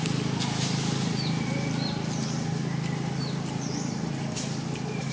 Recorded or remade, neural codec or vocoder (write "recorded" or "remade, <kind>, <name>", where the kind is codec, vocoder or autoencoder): recorded